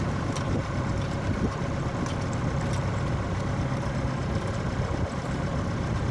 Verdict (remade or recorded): recorded